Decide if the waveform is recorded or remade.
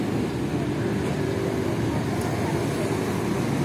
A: recorded